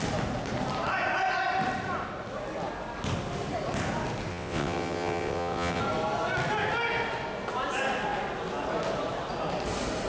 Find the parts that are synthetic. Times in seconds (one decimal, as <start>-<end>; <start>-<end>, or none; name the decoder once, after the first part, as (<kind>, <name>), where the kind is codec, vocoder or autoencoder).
4.3-5.8 (vocoder, WaveNeXt)